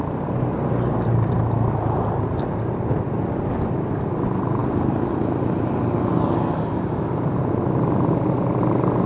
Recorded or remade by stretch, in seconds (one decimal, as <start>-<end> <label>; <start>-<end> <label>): 0.0-9.1 recorded